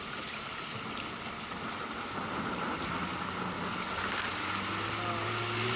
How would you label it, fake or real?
real